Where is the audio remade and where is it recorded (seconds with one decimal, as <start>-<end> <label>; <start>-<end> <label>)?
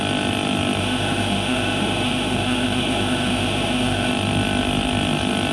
0.0-0.8 recorded; 0.8-4.1 remade; 4.1-5.5 recorded